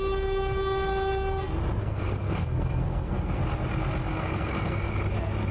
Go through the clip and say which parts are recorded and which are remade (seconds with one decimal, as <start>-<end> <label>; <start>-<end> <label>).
0.0-1.8 recorded; 1.8-3.4 remade; 3.4-4.0 recorded; 4.0-4.9 remade; 4.9-5.5 recorded